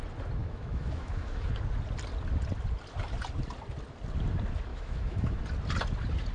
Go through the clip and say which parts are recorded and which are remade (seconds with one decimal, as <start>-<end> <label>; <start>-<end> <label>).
0.0-0.4 recorded; 0.4-1.5 remade; 1.5-4.7 recorded; 4.7-5.4 remade; 5.4-6.3 recorded